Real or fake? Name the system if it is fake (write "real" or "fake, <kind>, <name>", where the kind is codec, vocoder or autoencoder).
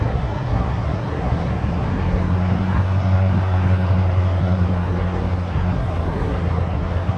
fake, codec, SNAC